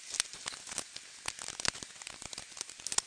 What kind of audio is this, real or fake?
real